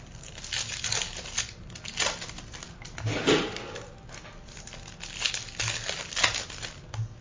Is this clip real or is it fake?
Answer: real